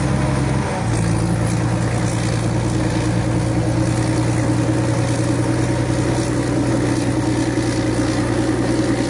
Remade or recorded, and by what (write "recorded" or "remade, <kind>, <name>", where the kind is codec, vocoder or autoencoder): recorded